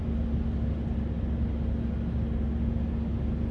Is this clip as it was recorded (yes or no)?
yes